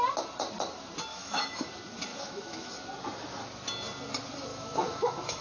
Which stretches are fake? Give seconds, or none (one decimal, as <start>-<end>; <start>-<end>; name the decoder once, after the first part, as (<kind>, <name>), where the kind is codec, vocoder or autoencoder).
1.1-1.7 (autoencoder, DAC-VAE); 2.1-2.7; 4.5-5.4